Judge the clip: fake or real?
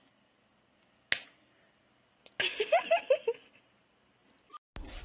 real